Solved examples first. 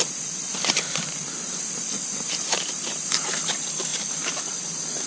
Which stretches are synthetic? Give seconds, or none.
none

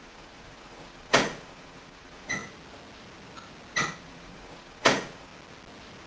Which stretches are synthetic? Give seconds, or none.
0.0-2.4 (vocoder, Vocos); 4.0-5.3

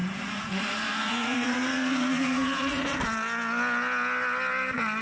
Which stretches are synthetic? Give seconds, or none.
0.0-3.0 (vocoder, Vocos)

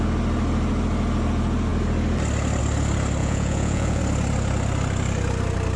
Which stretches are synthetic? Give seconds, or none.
3.2-4.0 (vocoder, Vocos)